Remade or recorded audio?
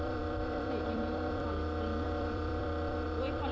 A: remade